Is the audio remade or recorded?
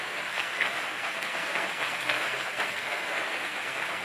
remade